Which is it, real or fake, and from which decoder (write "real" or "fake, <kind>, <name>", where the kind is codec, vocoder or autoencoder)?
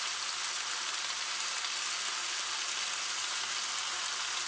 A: real